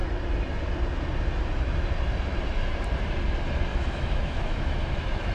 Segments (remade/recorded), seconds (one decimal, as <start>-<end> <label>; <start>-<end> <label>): 0.0-3.7 recorded; 3.7-5.3 remade